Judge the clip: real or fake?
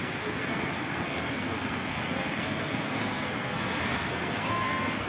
fake